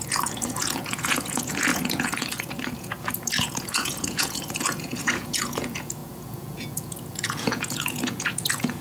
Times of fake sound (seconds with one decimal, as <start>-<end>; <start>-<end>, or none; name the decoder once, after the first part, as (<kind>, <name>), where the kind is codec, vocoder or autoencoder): 0.0-8.8 (vocoder, Vocos)